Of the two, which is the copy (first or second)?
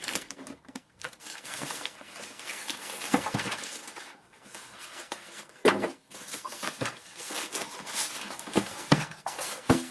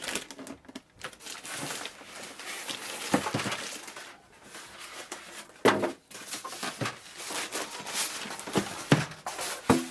first